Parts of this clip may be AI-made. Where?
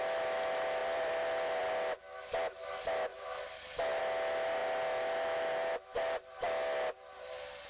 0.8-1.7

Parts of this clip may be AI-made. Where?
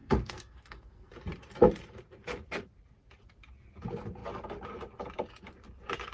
0.0-1.1